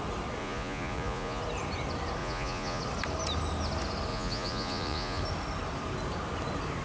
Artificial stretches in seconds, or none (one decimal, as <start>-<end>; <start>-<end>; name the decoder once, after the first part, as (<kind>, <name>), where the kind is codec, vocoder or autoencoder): 0.4-1.4 (vocoder, Vocos); 2.2-2.8; 4.1-5.2